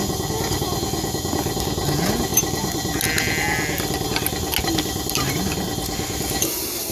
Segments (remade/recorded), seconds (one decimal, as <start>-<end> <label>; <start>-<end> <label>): 0.0-6.9 recorded